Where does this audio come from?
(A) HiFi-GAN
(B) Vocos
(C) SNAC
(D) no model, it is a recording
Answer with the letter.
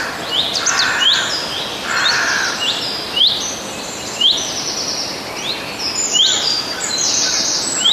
D